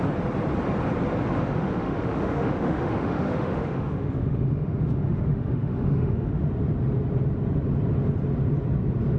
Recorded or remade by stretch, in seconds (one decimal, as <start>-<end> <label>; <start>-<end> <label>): 0.0-1.6 recorded; 1.6-6.4 remade; 6.4-9.2 recorded